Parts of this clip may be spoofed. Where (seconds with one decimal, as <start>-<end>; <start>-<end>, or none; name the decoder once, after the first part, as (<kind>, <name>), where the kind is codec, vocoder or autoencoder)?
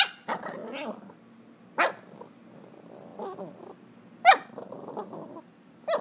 none